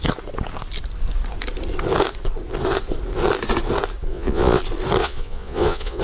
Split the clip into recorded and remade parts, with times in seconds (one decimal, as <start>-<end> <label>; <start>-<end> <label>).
0.0-4.1 recorded; 4.1-4.6 remade; 4.6-5.0 recorded; 5.0-6.0 remade